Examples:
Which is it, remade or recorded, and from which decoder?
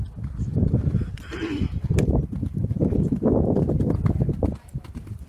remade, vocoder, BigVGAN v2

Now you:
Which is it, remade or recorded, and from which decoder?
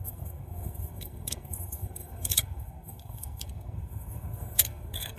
remade, codec, SNAC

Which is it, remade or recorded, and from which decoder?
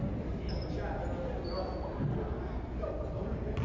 recorded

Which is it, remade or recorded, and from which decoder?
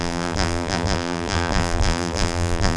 remade, vocoder, BigVGAN v2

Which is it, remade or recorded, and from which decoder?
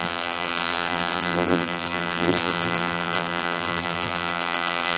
remade, vocoder, BigVGAN v2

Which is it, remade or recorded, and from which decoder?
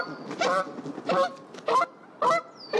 recorded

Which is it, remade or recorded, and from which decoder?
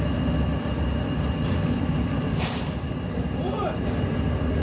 recorded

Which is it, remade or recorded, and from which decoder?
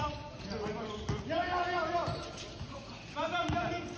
recorded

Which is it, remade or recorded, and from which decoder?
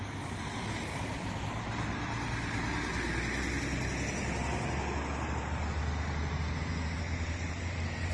recorded